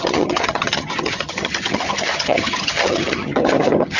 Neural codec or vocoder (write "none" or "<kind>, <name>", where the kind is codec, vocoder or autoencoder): vocoder, HiFi-GAN